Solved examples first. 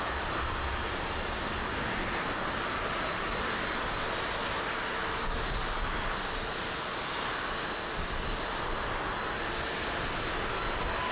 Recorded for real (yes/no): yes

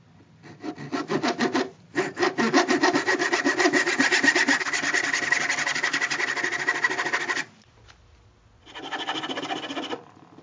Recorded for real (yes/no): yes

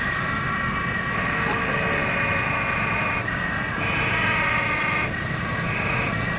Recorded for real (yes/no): yes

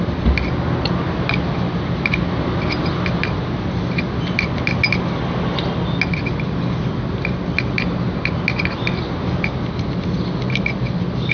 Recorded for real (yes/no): yes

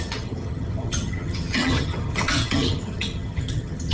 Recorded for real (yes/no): no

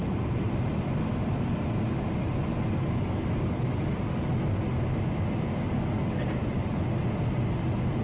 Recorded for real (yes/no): yes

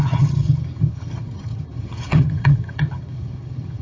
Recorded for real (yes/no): no